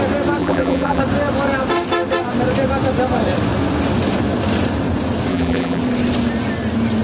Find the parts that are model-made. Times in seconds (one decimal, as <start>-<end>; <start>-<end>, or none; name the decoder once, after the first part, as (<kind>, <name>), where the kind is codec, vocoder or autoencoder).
0.4-1.0 (vocoder, BigVGAN v2); 5.3-5.8

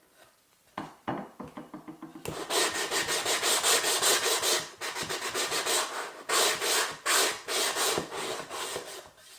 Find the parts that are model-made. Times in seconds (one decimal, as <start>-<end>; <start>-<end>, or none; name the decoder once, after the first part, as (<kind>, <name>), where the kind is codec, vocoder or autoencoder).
none

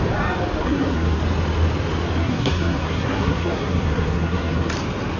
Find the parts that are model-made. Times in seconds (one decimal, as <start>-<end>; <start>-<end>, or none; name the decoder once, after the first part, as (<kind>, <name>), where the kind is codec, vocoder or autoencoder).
0.6-1.2 (codec, SNAC); 2.2-4.7

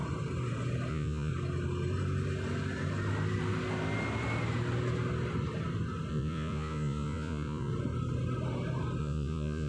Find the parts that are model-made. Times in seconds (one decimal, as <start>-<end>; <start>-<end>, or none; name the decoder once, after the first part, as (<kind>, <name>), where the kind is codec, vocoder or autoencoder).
0.9-1.3 (vocoder, Vocos); 6.1-7.7; 9.0-9.7

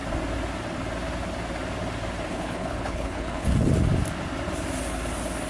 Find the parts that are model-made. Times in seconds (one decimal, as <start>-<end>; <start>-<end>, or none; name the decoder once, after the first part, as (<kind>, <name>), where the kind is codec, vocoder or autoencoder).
2.3-3.5 (codec, HILCodec)

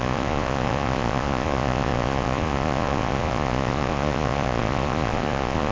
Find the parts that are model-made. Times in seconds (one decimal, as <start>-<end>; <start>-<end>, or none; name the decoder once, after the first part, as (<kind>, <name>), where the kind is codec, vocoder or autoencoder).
0.0-5.7 (vocoder, Vocos)

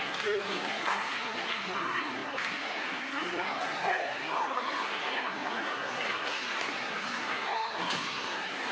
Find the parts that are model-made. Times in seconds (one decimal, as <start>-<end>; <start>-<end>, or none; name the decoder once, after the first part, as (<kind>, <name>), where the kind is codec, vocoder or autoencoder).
0.0-8.7 (codec, SNAC)

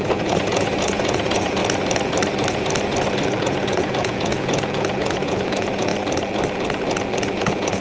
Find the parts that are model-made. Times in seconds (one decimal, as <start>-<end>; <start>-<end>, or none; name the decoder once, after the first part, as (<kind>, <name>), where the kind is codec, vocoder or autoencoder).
0.0-1.6 (vocoder, Vocos); 3.4-5.9; 7.3-7.8